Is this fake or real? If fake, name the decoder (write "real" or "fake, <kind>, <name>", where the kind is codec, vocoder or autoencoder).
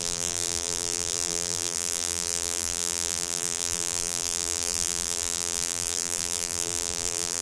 fake, vocoder, BigVGAN v2